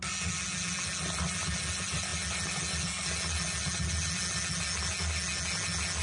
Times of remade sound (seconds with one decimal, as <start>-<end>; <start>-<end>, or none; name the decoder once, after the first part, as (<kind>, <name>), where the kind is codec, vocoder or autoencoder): none